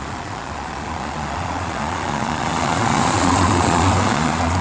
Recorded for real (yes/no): no